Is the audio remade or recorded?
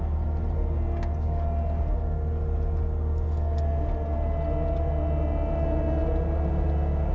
recorded